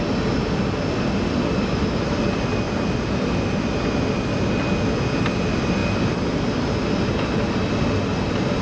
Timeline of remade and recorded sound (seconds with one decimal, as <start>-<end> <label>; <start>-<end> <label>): 0.0-8.6 recorded